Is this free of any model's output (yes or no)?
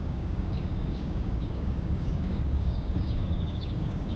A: no